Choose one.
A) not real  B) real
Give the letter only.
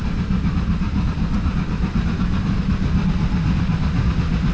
B